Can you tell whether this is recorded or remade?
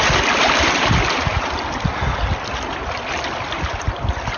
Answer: recorded